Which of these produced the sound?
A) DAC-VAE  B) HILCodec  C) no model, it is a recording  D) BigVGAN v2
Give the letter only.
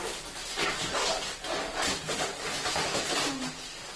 C